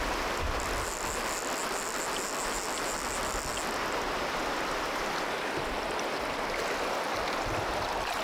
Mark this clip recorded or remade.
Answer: recorded